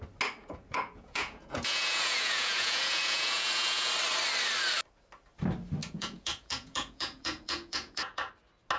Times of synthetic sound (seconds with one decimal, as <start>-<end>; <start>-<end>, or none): 0.4-3.9; 5.8-8.2